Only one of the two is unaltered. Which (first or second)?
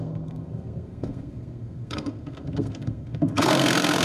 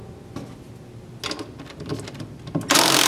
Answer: second